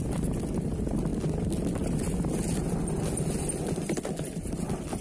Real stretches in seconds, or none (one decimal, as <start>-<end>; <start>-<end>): 0.0-5.0